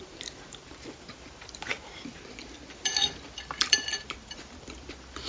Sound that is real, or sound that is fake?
fake